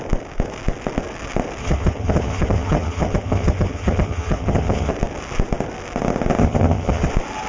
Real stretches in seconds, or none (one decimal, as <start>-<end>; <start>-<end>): 0.0-1.6; 4.9-6.4; 7.1-7.5